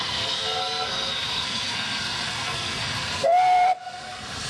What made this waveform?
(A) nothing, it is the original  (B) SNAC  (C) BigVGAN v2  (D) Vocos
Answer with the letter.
B